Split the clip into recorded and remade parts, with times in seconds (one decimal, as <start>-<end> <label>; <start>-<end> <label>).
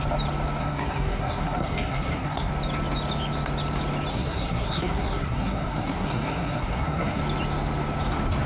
0.0-0.6 recorded; 0.6-2.5 remade; 2.5-4.1 recorded; 4.1-7.2 remade; 7.2-8.5 recorded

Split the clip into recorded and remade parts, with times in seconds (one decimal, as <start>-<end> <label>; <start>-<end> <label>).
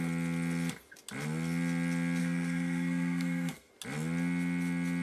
0.0-2.2 recorded; 2.2-3.7 remade; 3.7-5.0 recorded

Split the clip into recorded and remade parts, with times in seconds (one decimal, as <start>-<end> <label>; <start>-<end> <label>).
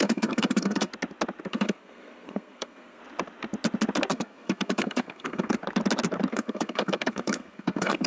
0.0-0.9 remade; 0.9-1.5 recorded; 1.5-3.0 remade; 3.0-4.1 recorded; 4.1-5.6 remade; 5.6-6.3 recorded; 6.3-8.1 remade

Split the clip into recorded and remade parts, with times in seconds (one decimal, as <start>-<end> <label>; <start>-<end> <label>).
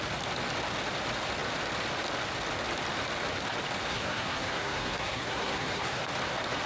0.0-3.9 recorded; 3.9-6.0 remade; 6.0-6.7 recorded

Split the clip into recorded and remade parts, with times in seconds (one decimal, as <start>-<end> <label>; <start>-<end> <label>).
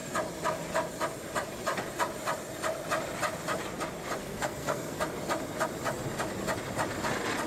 0.0-4.2 recorded; 4.2-5.0 remade; 5.0-7.5 recorded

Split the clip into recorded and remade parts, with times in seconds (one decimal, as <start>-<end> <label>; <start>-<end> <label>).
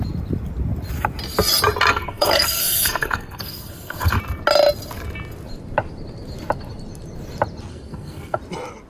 0.0-1.9 recorded; 1.9-4.2 remade; 4.2-7.7 recorded; 7.7-8.4 remade; 8.4-8.9 recorded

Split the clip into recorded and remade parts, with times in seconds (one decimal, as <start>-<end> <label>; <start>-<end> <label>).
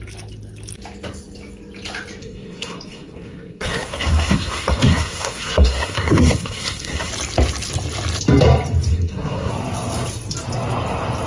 0.0-2.2 recorded; 2.2-7.1 remade; 7.1-8.9 recorded; 8.9-9.5 remade; 9.5-11.3 recorded